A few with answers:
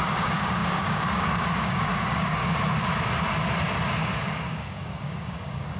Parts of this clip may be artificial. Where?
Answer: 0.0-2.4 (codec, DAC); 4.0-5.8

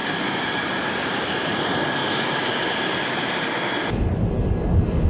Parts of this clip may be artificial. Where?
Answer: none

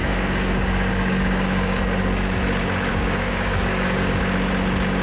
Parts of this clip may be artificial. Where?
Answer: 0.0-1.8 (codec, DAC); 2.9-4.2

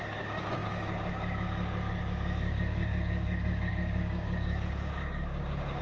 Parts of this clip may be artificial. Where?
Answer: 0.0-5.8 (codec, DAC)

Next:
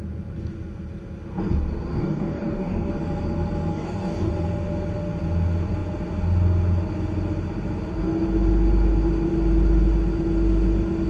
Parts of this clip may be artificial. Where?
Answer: 1.9-2.9 (codec, DAC); 3.7-4.3

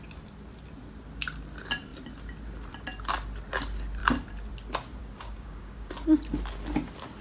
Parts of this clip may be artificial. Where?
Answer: 5.0-5.9 (codec, DAC)

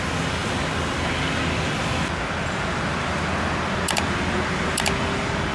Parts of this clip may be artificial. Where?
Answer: none